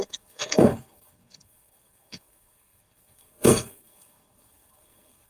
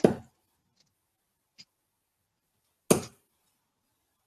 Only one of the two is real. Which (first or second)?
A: second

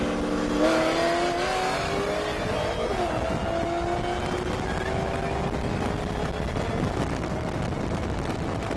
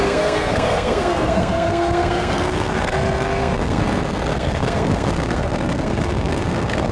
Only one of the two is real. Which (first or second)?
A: first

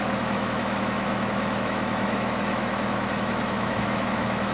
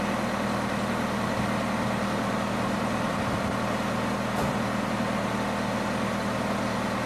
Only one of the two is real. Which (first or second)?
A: second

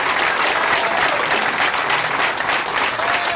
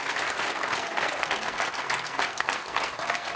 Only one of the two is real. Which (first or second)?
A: first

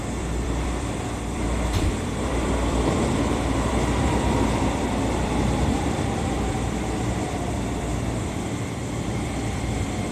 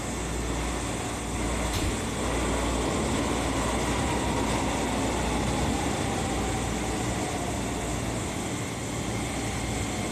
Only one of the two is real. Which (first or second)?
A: second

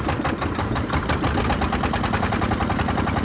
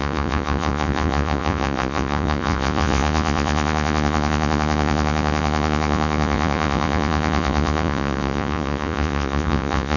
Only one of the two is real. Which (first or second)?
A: first